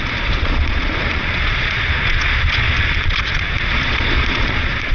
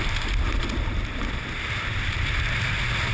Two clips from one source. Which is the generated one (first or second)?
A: first